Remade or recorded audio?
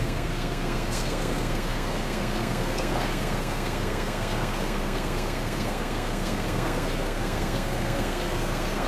remade